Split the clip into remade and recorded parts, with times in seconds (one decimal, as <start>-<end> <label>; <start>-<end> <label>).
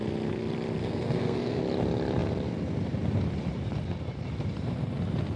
0.0-0.8 recorded; 0.8-1.6 remade; 1.6-5.4 recorded